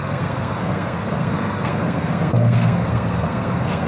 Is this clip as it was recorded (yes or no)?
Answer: no